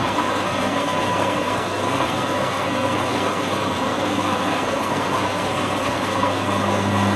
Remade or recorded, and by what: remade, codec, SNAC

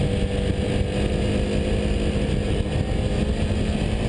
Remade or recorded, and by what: recorded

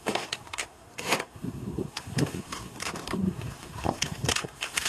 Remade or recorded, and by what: remade, codec, SNAC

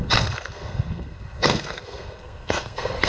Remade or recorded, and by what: remade, codec, SNAC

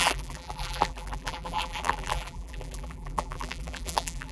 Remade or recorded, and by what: remade, vocoder, BigVGAN v2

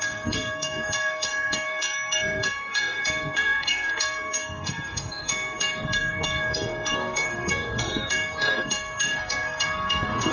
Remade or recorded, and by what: remade, codec, SNAC